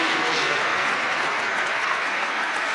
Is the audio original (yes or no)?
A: no